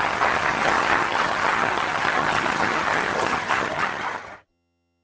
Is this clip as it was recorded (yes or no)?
no